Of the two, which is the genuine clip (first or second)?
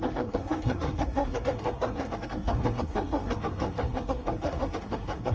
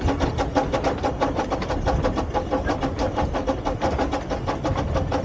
second